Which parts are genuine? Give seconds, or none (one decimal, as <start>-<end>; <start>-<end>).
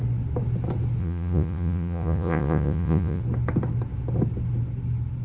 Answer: 0.0-1.0; 3.2-5.2